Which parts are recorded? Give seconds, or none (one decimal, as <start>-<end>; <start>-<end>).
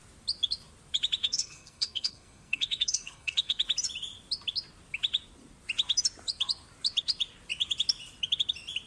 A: 0.0-1.2; 3.6-8.9